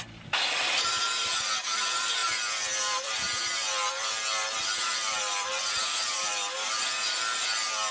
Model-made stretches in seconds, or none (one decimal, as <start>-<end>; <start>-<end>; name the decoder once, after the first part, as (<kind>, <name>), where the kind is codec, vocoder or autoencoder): 0.0-7.9 (vocoder, BigVGAN v2)